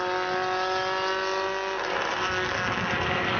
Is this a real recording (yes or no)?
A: yes